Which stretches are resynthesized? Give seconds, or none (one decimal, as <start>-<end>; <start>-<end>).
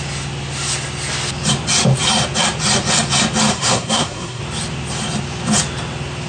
3.5-4.4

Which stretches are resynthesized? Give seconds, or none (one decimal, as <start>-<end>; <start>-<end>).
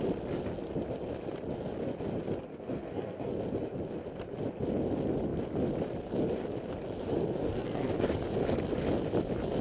2.5-3.3; 7.4-7.9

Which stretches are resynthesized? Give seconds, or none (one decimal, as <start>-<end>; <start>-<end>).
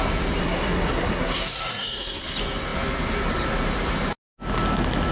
0.4-2.2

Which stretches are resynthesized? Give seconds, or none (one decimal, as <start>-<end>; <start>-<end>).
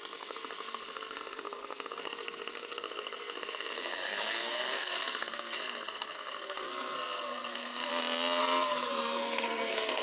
0.0-7.9; 8.4-10.0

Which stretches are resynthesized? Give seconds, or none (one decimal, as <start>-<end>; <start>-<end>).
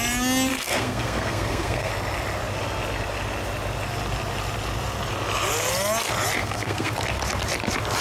0.5-1.9; 6.4-6.9